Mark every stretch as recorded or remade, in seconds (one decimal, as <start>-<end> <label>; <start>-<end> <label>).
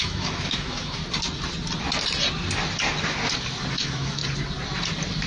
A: 0.0-1.0 remade; 1.0-3.7 recorded; 3.7-4.2 remade; 4.2-5.3 recorded